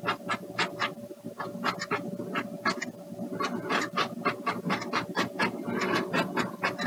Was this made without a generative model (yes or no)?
yes